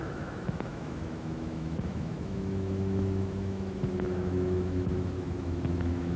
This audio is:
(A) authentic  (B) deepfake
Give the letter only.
B